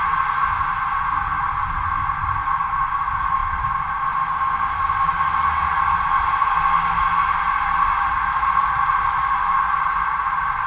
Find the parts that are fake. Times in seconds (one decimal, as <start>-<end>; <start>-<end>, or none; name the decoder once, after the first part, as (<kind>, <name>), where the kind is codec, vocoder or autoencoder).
none